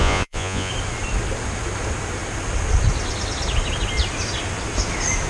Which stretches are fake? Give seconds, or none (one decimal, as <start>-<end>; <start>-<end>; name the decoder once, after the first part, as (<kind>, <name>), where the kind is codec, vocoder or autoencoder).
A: 0.0-0.7 (vocoder, Vocos)